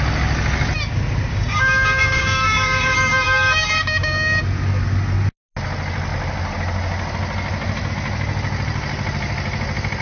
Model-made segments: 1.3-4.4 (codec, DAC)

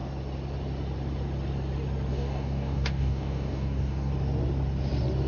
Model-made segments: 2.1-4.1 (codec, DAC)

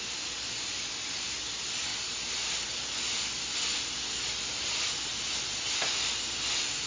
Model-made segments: none

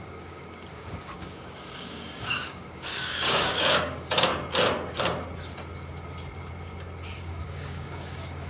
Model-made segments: 0.0-4.3 (codec, DAC); 7.2-8.5

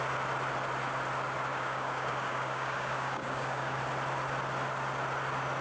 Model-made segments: 1.5-3.8 (codec, DAC)

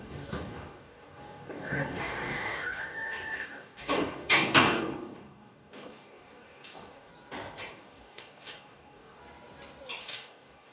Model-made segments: 0.0-7.1 (codec, DAC); 7.7-9.2; 10.0-10.7

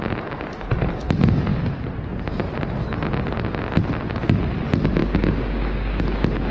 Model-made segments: 5.0-6.0 (codec, DAC)

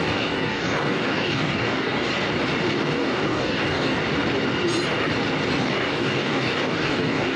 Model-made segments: 0.0-2.1 (codec, DAC); 2.7-4.0; 5.6-7.4